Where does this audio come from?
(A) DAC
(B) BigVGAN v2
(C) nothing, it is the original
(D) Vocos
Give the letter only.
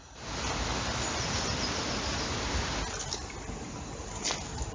C